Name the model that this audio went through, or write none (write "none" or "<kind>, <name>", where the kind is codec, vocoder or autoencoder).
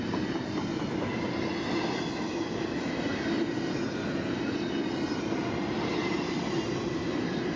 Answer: none